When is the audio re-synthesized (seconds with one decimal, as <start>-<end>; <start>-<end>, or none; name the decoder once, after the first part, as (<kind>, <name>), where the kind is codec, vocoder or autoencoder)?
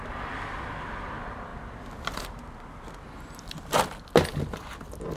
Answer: none